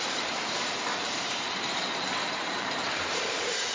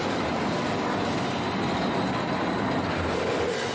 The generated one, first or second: first